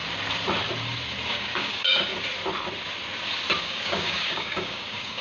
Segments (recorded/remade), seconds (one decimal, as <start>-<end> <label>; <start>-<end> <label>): 0.0-1.3 recorded; 1.3-2.1 remade; 2.1-3.6 recorded; 3.6-5.2 remade